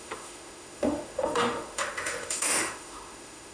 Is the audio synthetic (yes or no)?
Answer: yes